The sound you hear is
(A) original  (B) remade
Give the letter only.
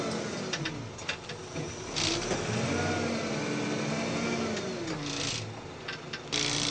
A